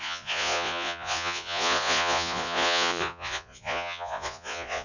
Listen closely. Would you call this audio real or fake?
fake